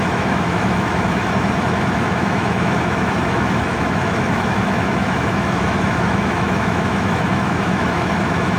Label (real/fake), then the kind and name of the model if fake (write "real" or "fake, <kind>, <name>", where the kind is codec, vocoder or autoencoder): fake, autoencoder, DAC-VAE